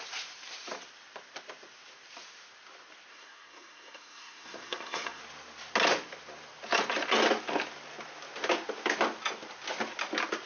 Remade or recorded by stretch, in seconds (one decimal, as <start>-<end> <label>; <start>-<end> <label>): 0.0-3.1 recorded; 3.1-5.2 remade; 5.2-10.5 recorded